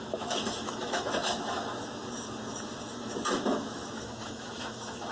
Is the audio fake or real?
fake